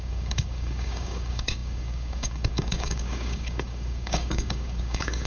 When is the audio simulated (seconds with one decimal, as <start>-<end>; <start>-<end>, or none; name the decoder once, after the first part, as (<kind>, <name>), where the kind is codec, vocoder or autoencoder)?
0.0-5.3 (codec, DAC)

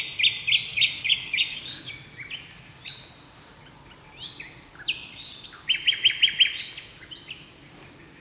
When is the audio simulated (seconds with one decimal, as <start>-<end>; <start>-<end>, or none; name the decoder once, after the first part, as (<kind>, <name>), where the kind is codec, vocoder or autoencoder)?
0.7-1.9 (codec, DAC)

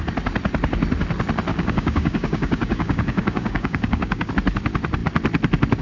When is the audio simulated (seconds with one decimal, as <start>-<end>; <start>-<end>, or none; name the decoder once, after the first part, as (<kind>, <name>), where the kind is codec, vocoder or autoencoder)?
1.5-4.3 (codec, DAC)

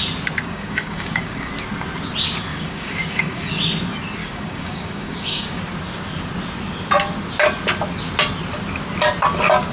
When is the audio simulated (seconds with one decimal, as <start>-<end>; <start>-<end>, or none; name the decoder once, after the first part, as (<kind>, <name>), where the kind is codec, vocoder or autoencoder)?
0.4-1.5 (codec, DAC); 2.5-3.4; 4.2-5.6

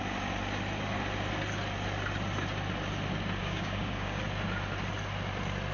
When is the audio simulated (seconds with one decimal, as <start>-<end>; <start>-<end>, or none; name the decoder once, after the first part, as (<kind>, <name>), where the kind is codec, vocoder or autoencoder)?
3.4-4.2 (codec, DAC)